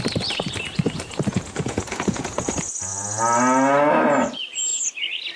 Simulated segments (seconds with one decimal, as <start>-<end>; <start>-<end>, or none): 1.3-2.5